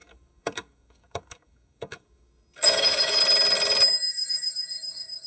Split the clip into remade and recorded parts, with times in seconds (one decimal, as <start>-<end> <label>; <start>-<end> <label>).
0.0-3.2 remade; 3.2-4.1 recorded; 4.1-5.3 remade